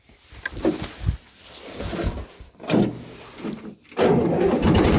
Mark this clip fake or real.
real